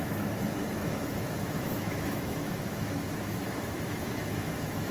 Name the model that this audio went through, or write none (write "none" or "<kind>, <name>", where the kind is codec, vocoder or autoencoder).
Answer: autoencoder, DAC-VAE